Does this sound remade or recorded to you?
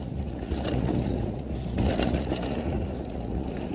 remade